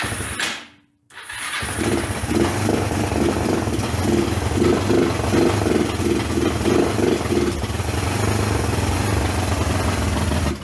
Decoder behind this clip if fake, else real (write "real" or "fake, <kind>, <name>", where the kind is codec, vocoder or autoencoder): real